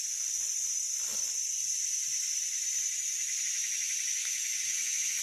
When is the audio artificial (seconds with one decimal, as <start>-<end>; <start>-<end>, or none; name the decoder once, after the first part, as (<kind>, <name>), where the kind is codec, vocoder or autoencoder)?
4.2-5.2 (autoencoder, DAC-VAE)